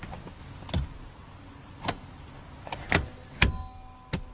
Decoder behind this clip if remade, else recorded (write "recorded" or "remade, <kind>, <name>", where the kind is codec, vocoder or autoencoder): recorded